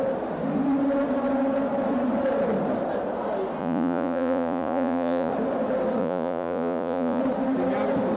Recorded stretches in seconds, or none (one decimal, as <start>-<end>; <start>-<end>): 0.0-3.6; 5.3-6.0; 7.2-8.2